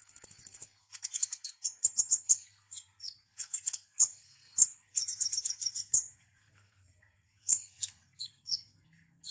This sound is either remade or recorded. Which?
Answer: remade